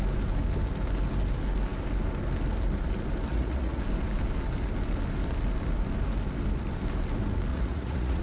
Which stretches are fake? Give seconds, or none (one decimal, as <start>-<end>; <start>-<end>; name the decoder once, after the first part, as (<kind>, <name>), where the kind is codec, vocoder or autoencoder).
3.3-3.8 (vocoder, Vocos); 7.5-8.2